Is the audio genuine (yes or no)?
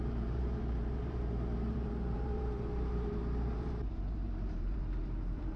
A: no